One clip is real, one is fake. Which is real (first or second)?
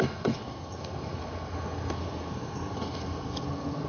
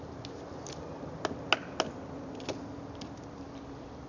second